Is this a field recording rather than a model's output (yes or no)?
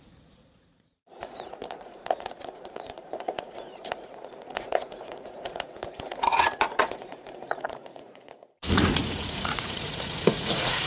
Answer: no